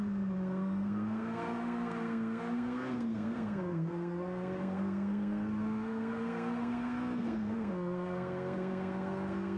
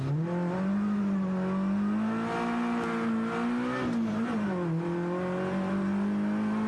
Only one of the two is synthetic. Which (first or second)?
first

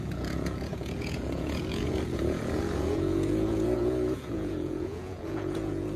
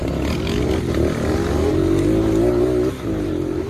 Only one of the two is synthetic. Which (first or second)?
first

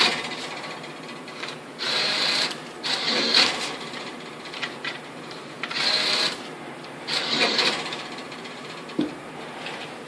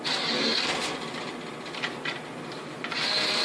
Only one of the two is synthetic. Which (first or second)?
first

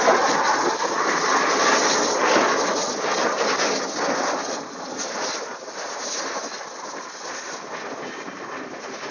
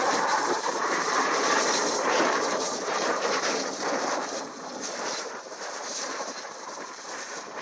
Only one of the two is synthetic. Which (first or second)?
second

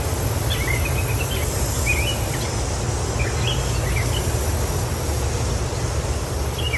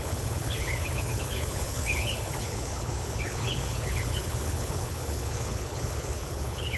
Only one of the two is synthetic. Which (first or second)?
second